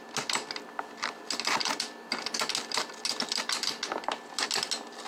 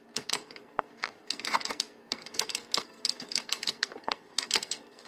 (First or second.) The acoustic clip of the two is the first